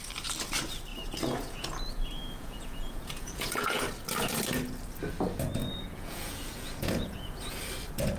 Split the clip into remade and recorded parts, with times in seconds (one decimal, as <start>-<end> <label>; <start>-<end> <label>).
0.0-0.9 recorded; 0.9-3.8 remade; 3.8-5.6 recorded; 5.6-7.6 remade; 7.6-8.2 recorded